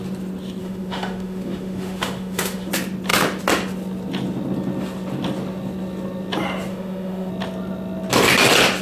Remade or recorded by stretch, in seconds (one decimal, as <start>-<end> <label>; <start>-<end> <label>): 0.0-0.6 recorded; 0.6-2.7 remade; 2.7-6.7 recorded; 6.7-7.3 remade; 7.3-8.8 recorded